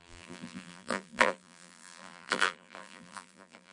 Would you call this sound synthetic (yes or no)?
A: yes